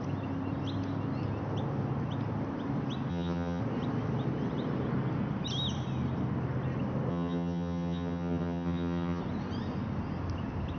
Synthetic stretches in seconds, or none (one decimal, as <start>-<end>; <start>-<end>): 3.1-3.6; 7.1-9.2